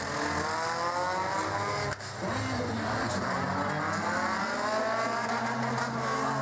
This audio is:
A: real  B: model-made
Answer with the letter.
A